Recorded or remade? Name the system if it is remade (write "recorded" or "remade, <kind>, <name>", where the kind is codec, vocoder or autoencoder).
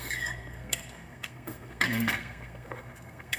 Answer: remade, codec, SNAC